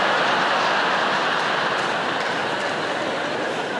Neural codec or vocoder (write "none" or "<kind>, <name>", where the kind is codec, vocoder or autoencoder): none